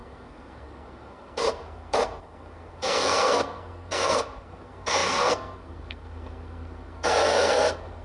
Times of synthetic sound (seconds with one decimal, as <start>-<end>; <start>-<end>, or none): 0.0-8.0